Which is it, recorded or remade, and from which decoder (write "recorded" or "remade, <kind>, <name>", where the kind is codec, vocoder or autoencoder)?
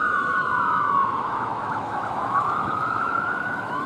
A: remade, autoencoder, DAC-VAE